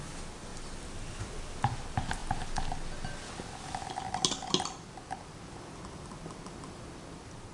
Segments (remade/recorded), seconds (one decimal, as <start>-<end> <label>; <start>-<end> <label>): 0.0-7.5 recorded